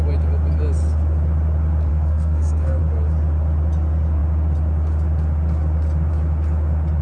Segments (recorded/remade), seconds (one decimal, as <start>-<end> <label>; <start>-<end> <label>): 0.0-1.9 recorded; 1.9-2.8 remade; 2.8-7.0 recorded